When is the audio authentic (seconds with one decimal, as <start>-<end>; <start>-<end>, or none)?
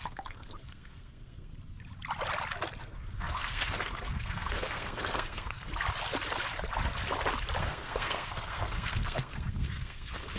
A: 1.5-2.8; 5.7-7.6